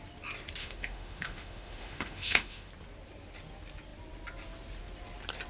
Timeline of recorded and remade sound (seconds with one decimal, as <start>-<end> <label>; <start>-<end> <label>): 0.0-0.6 recorded; 0.6-2.7 remade; 2.7-5.5 recorded